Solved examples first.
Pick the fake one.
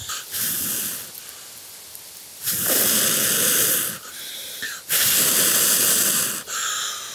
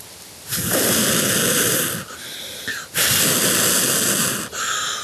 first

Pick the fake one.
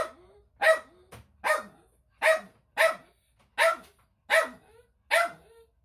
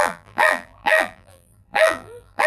second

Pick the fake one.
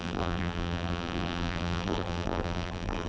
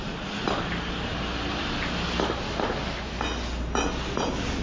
first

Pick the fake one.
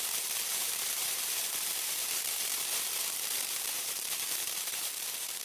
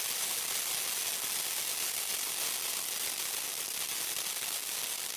first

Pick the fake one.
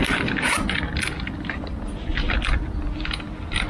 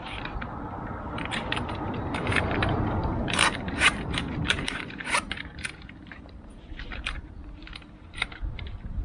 second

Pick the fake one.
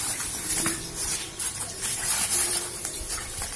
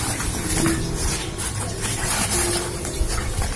first